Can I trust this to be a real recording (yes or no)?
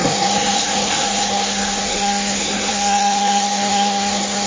no